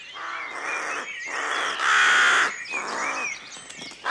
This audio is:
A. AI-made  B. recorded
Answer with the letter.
B